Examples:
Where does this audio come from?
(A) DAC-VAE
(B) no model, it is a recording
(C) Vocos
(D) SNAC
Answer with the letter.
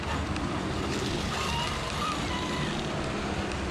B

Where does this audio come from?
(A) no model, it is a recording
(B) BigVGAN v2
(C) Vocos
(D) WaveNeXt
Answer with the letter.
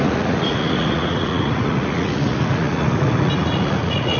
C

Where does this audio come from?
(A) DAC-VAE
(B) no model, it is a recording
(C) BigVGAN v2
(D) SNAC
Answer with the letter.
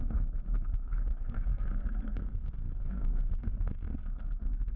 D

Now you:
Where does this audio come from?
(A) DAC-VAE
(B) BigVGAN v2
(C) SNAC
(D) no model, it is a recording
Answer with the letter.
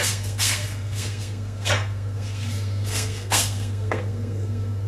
C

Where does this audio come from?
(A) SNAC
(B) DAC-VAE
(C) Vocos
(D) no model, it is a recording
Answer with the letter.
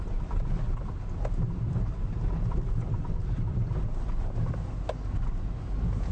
D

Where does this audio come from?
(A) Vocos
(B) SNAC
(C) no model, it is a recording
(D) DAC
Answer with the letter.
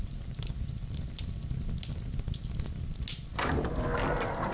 C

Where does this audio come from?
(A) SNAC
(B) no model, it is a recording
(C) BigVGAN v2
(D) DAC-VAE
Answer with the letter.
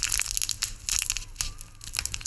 B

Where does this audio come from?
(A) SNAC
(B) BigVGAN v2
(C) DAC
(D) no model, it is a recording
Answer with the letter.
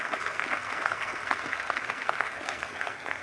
A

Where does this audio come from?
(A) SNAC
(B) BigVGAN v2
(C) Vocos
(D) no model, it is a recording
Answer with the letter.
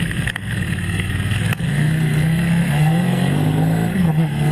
A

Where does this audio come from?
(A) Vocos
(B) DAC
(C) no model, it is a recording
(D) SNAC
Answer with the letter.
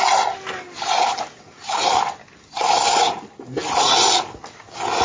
C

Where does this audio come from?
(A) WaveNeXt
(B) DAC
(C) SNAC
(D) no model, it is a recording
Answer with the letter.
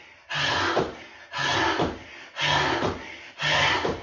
D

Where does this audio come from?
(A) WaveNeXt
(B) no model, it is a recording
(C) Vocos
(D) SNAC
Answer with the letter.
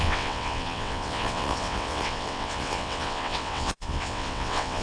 A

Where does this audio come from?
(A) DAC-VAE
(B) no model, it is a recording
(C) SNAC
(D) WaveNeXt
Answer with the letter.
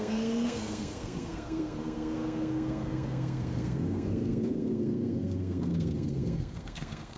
C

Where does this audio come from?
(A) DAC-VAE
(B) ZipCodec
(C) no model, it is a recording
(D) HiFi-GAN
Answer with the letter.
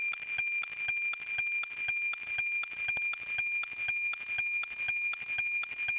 C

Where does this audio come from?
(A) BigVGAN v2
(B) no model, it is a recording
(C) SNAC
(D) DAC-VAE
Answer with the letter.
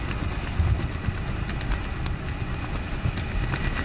B